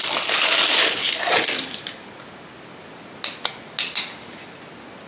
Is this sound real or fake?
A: real